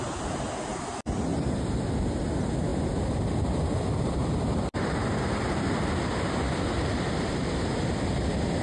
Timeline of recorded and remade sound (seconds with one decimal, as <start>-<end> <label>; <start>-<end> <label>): 0.0-8.6 recorded